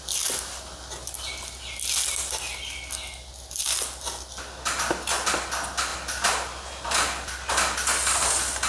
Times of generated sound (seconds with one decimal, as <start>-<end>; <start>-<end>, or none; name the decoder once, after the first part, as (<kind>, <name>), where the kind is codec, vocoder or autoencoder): none